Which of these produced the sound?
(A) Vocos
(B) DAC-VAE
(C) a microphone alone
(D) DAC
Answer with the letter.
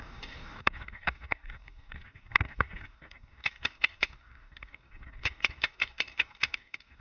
D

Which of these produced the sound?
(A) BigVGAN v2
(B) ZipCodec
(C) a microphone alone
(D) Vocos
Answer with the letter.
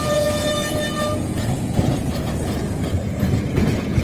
D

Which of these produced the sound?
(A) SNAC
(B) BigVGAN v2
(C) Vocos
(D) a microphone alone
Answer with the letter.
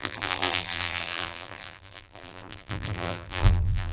B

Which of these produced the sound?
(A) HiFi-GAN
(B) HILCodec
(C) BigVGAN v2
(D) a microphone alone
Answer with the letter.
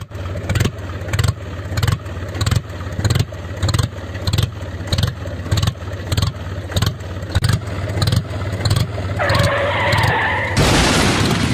D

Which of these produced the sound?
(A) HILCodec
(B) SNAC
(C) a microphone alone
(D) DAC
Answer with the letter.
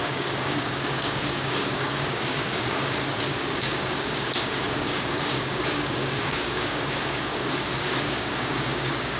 D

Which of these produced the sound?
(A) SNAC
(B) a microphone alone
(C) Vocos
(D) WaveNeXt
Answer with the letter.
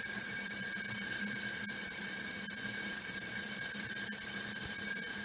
B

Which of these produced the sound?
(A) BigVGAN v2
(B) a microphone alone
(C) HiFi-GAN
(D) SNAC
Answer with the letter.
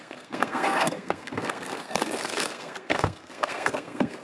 D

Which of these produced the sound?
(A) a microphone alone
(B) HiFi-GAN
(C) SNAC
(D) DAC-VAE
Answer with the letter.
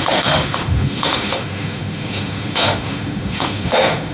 D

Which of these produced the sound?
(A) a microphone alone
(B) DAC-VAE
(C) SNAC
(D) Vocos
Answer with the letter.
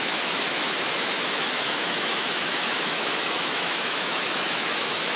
B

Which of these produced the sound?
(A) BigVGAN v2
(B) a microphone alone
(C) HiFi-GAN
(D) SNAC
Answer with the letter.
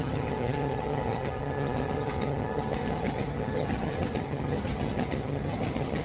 C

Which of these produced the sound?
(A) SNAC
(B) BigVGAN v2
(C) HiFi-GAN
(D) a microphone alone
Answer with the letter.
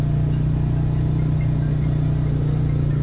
D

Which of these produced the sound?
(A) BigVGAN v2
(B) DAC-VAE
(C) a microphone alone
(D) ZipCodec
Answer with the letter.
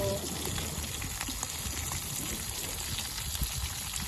C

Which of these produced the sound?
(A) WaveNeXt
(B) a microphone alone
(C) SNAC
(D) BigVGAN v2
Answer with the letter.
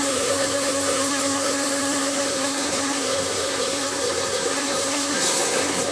C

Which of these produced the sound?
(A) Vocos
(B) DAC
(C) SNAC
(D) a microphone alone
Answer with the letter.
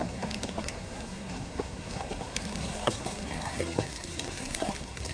C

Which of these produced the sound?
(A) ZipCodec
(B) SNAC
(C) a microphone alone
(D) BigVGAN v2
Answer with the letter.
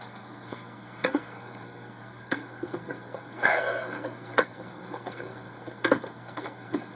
B